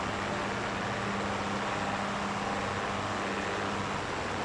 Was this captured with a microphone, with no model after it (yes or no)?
yes